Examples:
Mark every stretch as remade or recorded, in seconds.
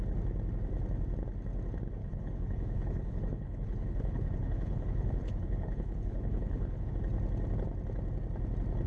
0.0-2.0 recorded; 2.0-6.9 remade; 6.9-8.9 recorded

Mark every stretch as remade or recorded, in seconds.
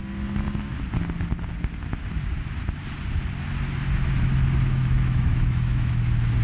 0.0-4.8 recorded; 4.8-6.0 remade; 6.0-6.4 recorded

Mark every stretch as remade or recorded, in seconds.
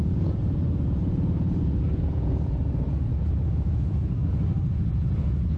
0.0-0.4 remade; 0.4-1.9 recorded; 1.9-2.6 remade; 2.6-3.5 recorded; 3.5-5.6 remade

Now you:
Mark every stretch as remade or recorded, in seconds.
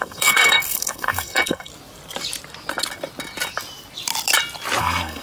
0.0-1.7 remade; 1.7-4.8 recorded; 4.8-5.2 remade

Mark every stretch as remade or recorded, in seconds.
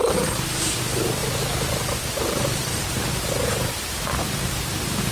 0.0-5.1 remade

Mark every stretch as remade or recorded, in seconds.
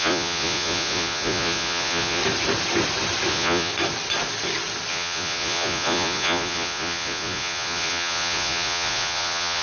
0.0-2.2 remade; 2.2-3.3 recorded; 3.3-3.7 remade; 3.7-4.9 recorded; 4.9-9.6 remade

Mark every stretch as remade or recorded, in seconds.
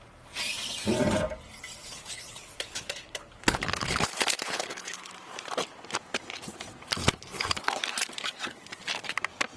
0.0-1.8 recorded; 1.8-5.1 remade; 5.1-7.0 recorded; 7.0-7.8 remade; 7.8-9.6 recorded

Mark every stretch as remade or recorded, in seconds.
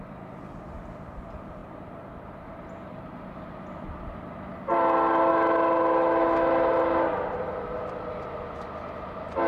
0.0-9.5 recorded